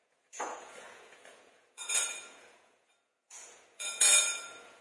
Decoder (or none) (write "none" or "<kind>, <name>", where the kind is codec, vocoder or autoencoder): vocoder, Vocos